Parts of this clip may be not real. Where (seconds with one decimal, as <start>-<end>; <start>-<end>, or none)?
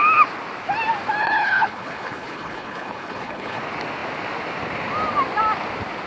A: 1.2-3.6